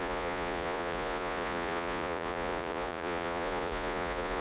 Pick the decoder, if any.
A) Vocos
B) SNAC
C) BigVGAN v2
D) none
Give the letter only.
A